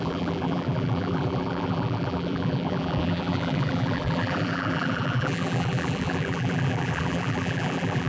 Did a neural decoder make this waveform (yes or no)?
yes